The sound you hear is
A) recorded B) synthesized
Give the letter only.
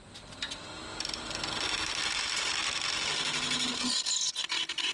A